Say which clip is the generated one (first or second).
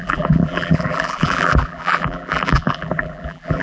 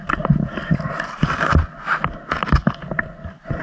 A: first